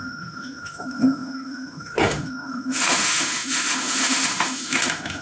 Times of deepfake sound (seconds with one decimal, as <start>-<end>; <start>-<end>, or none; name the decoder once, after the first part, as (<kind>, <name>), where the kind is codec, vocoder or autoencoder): 0.0-5.2 (autoencoder, DAC-VAE)